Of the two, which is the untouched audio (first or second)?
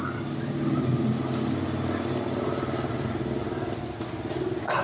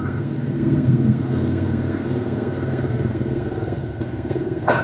first